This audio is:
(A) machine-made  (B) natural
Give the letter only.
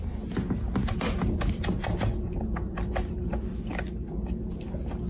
B